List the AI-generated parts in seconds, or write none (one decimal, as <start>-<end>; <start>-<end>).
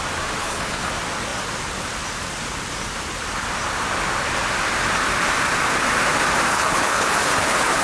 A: 0.4-0.9; 6.5-7.8